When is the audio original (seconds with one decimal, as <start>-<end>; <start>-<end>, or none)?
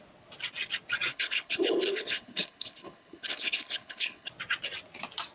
0.0-1.1; 4.3-5.3